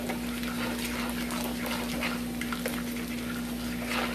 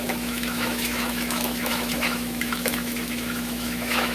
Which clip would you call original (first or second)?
first